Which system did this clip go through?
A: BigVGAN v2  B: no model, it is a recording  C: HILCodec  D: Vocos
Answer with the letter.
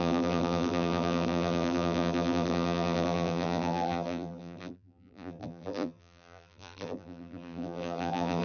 A